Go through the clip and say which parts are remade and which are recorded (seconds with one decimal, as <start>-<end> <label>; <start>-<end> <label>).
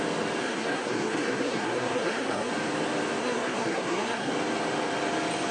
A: 0.0-0.4 recorded; 0.4-2.5 remade; 2.5-3.2 recorded; 3.2-4.3 remade; 4.3-5.5 recorded